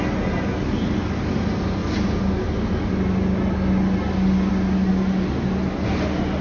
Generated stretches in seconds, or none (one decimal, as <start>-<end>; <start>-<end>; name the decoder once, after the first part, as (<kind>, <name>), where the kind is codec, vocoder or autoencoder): none